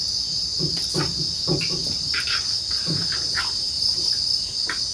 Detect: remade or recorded recorded